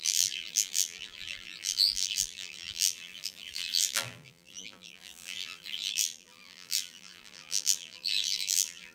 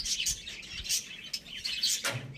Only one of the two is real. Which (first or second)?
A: second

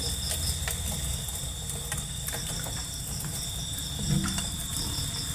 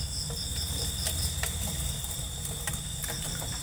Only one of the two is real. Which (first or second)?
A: first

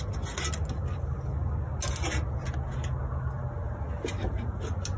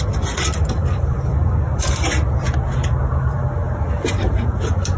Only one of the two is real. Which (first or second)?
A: first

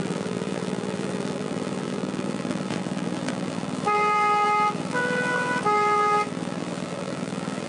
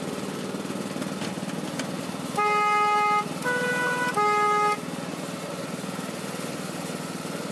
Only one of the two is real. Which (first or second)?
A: second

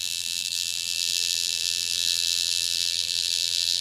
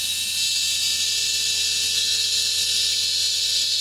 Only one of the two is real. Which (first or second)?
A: second